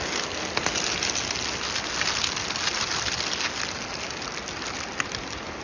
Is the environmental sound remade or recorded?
recorded